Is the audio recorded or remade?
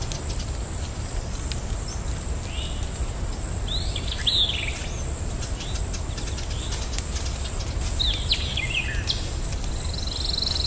recorded